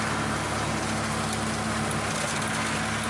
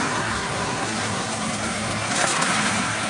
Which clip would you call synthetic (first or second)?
second